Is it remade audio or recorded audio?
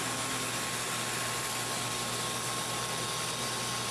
recorded